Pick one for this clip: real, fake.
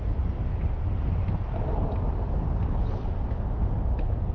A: real